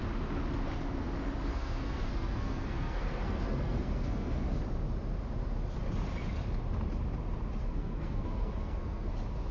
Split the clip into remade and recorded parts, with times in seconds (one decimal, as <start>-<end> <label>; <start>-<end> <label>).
0.0-1.5 recorded; 1.5-4.6 remade; 4.6-7.6 recorded; 7.6-9.1 remade; 9.1-9.5 recorded